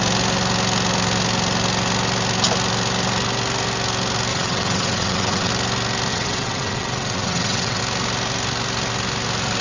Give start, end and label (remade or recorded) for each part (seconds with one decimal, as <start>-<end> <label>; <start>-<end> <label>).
0.0-4.3 recorded; 4.3-5.5 remade; 5.5-6.1 recorded; 6.1-7.8 remade; 7.8-9.6 recorded

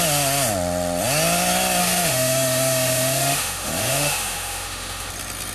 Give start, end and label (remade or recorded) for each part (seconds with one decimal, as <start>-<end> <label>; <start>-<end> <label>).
0.0-1.8 recorded; 1.8-5.1 remade; 5.1-5.5 recorded

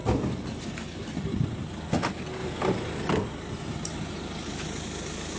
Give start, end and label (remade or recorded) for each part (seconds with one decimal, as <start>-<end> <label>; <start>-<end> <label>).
0.0-0.6 remade; 0.6-5.4 recorded

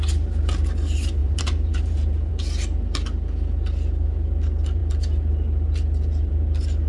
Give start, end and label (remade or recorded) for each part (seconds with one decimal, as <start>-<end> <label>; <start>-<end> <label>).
0.0-1.2 recorded; 1.2-2.3 remade; 2.3-6.9 recorded

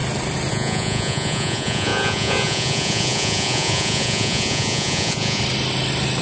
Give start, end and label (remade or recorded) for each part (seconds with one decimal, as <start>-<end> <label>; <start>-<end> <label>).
0.0-0.5 recorded; 0.5-5.4 remade; 5.4-6.2 recorded

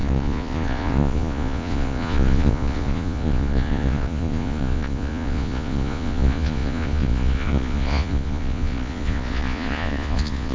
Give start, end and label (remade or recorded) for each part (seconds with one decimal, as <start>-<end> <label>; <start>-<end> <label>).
0.0-10.5 remade

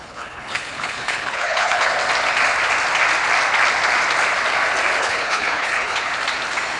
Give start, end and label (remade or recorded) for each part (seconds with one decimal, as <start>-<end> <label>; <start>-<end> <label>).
0.0-1.9 remade; 1.9-5.0 recorded; 5.0-6.1 remade; 6.1-6.8 recorded

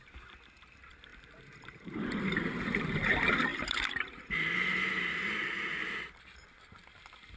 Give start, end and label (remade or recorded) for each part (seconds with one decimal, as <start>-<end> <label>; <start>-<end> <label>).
0.0-1.1 recorded; 1.1-2.8 remade; 2.8-3.5 recorded; 3.5-4.3 remade; 4.3-5.7 recorded; 5.7-6.4 remade; 6.4-7.4 recorded